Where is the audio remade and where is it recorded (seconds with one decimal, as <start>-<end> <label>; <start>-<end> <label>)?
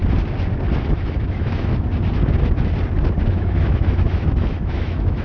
0.0-0.9 recorded; 0.9-1.7 remade; 1.7-3.3 recorded; 3.3-5.2 remade